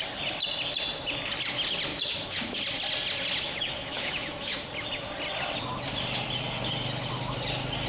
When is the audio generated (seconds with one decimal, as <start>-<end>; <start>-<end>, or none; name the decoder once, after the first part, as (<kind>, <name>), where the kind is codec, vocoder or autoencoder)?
1.9-2.6 (autoencoder, DAC-VAE); 3.5-4.6